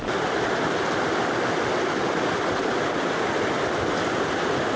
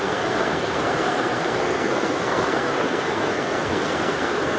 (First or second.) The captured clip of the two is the first